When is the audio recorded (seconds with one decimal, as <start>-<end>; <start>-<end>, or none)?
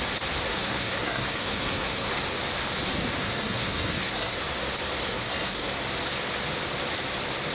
0.0-0.5; 2.1-3.2; 4.4-5.0; 5.7-7.5